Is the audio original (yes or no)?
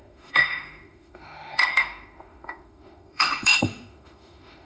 no